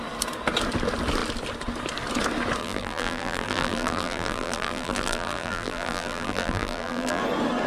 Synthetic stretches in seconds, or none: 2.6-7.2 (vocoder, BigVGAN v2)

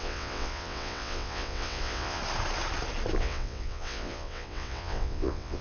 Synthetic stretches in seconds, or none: 0.0-2.2 (vocoder, WaveNeXt); 3.2-5.6

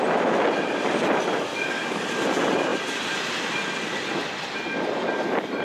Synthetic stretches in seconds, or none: 1.5-2.1 (codec, DAC)

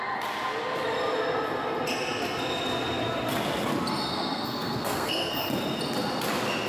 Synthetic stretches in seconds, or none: 4.1-5.4 (codec, SNAC)

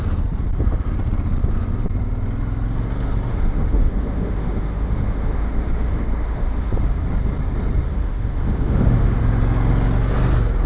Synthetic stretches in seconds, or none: 3.3-6.7 (autoencoder, DAC-VAE); 7.9-9.2

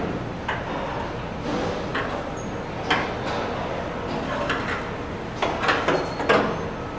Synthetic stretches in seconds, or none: none

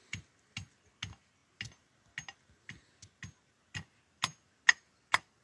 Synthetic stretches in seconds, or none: none